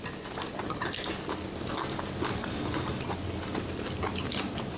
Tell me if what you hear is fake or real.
real